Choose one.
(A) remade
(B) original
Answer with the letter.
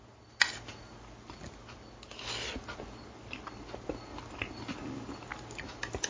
B